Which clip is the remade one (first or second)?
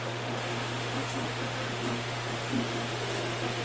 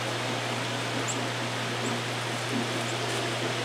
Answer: first